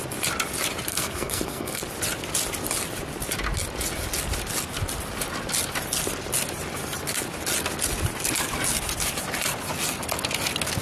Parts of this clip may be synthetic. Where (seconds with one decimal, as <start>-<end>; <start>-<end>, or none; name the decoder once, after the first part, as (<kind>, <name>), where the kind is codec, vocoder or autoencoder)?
0.9-1.8 (codec, SNAC)